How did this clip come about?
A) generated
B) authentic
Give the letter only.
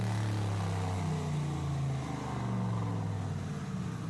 B